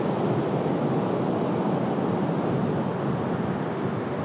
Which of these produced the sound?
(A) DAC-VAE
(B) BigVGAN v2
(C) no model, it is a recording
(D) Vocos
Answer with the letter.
C